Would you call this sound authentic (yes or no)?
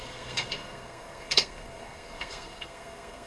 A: no